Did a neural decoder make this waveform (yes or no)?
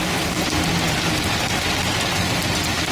no